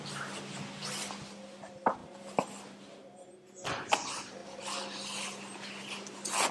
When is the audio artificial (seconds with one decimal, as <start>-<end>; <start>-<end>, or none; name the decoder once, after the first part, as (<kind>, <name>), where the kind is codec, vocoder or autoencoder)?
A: none